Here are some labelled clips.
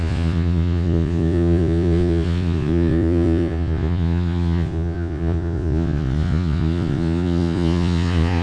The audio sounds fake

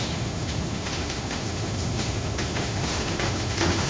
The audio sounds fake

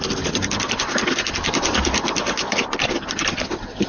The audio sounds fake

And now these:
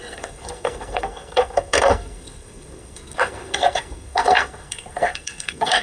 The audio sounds fake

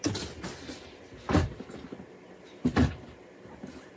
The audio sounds real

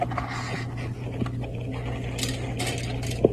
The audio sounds real